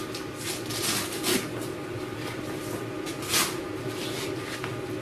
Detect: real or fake real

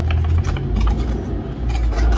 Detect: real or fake real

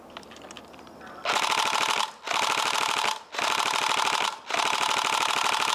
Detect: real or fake real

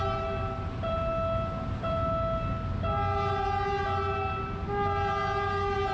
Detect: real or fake real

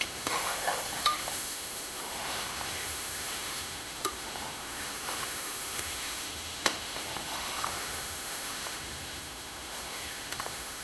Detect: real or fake fake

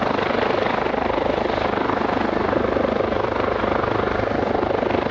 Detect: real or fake real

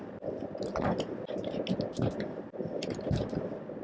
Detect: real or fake real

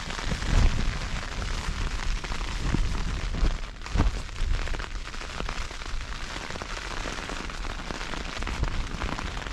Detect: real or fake real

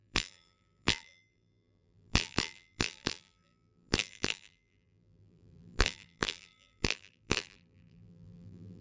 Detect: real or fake fake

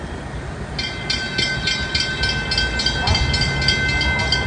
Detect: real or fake real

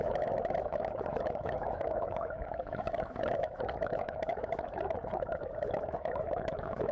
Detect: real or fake fake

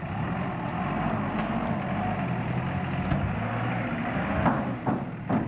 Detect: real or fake real